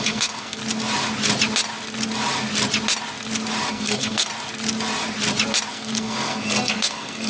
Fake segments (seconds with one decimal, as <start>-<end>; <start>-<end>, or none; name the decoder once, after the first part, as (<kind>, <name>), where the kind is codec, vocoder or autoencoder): 0.0-0.6 (codec, SNAC); 3.7-4.3; 5.7-7.3